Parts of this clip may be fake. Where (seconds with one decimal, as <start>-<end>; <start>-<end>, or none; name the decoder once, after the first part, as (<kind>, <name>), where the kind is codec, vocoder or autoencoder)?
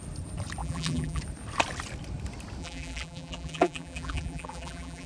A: 0.6-1.2 (vocoder, BigVGAN v2); 2.6-5.1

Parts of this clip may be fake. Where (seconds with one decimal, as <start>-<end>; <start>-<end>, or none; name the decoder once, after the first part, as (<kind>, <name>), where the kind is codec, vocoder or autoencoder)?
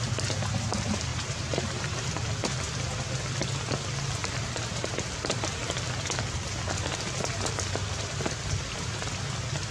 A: 1.1-2.1 (vocoder, BigVGAN v2); 4.2-5.4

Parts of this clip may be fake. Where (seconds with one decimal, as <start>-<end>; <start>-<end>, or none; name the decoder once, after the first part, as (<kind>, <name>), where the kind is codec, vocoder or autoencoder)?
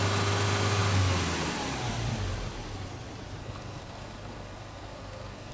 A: 3.4-5.5 (codec, SNAC)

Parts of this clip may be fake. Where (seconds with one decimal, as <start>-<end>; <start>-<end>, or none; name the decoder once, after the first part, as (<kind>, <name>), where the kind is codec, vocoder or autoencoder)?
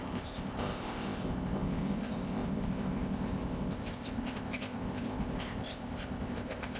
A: 0.0-6.8 (codec, ZipCodec)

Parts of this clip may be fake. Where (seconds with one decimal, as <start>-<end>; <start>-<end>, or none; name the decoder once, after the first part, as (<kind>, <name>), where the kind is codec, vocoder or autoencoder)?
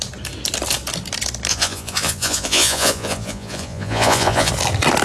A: 1.5-4.5 (vocoder, Vocos)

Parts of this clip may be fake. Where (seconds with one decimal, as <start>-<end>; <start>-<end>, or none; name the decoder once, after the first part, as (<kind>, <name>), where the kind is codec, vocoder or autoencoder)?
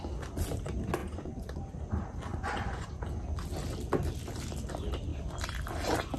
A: 1.0-1.6 (vocoder, Vocos); 2.3-2.9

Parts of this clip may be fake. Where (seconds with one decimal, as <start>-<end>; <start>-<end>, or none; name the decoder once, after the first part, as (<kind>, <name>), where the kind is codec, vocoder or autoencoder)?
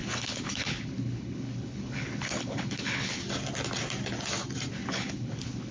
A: 0.0-3.2 (codec, HILCodec); 4.7-5.7